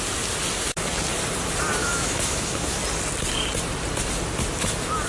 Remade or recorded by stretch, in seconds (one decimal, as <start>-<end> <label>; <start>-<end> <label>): 0.0-1.8 recorded; 1.8-2.8 remade; 2.8-5.1 recorded